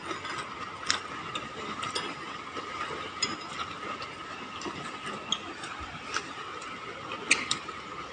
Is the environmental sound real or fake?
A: real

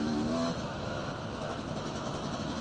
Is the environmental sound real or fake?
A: fake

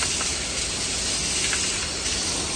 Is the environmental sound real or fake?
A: real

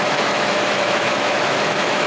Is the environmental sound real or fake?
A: fake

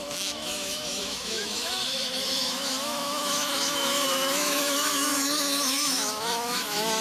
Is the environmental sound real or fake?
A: fake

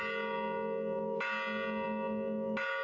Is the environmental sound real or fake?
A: real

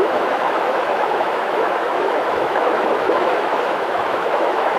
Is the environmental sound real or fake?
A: fake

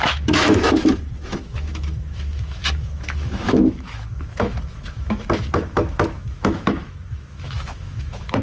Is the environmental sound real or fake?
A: fake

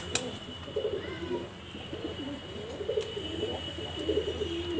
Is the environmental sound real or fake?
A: real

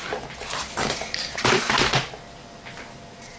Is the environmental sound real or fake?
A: real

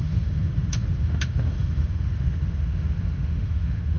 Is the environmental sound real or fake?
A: fake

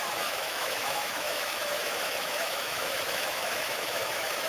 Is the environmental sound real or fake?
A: fake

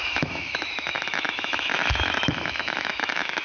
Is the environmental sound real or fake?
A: fake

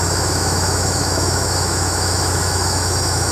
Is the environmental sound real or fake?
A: fake